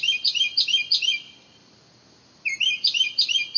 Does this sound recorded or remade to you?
remade